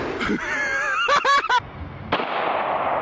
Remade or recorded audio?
recorded